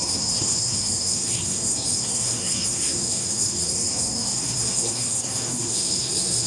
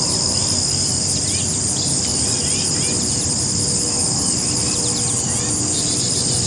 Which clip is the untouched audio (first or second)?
second